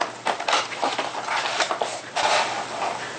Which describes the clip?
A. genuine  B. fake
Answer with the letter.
A